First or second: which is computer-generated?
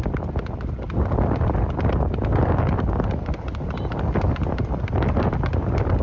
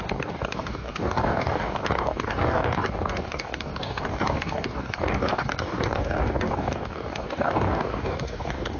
second